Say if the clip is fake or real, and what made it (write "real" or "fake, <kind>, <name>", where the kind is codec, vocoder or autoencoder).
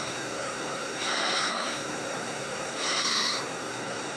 fake, codec, SNAC